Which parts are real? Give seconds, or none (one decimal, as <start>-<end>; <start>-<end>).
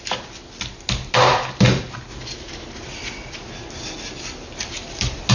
0.0-5.3